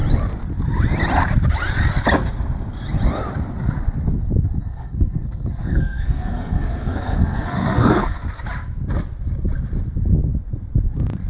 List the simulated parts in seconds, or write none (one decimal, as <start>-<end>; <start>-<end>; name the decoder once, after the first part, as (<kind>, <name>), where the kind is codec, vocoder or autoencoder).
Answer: 4.6-8.2 (codec, SNAC)